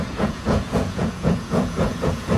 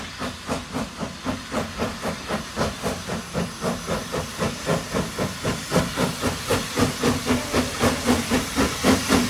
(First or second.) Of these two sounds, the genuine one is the second